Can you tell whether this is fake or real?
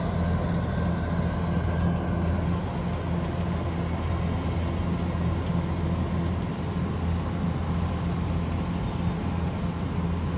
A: real